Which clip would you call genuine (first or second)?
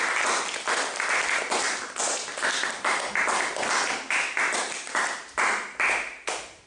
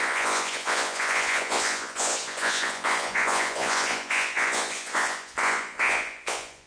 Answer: first